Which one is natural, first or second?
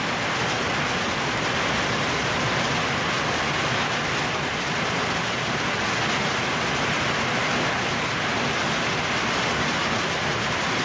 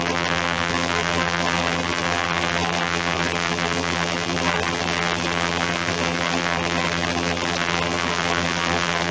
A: first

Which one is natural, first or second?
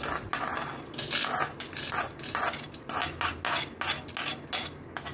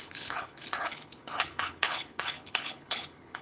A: first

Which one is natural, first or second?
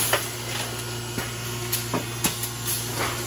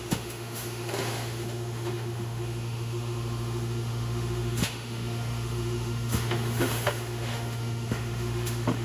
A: first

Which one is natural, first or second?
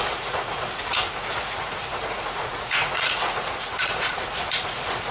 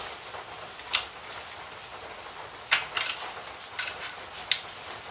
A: second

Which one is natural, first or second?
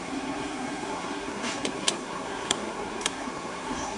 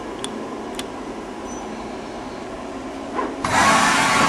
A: second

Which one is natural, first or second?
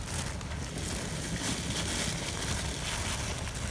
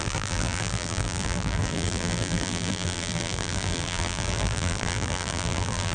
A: first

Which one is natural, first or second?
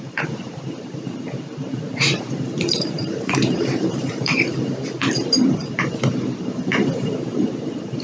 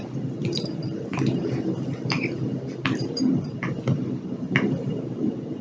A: second